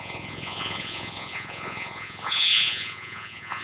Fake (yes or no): yes